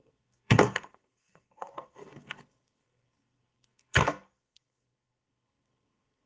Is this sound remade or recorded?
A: remade